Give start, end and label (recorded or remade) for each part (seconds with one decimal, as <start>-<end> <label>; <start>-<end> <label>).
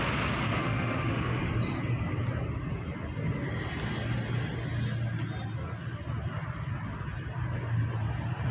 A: 0.0-0.6 recorded; 0.6-1.4 remade; 1.4-8.5 recorded